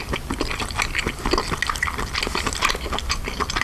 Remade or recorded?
recorded